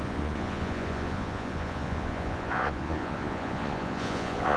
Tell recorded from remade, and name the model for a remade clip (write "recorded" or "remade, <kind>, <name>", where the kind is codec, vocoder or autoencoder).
remade, vocoder, Vocos